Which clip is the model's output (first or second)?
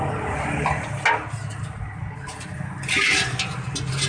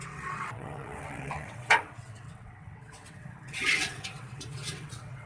second